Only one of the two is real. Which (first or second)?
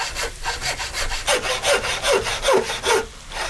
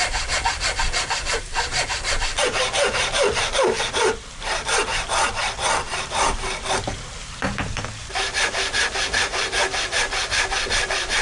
first